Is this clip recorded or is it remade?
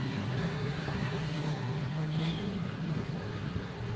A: remade